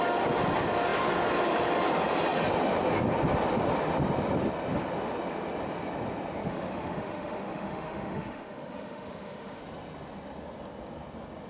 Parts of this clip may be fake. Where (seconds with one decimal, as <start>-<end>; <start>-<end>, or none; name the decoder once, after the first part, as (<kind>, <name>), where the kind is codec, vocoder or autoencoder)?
6.5-9.6 (autoencoder, DAC-VAE)